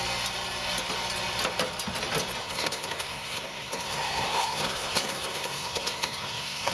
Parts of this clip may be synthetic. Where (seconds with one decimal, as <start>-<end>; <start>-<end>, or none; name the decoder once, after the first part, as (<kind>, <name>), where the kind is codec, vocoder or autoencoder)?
2.4-6.7 (codec, SNAC)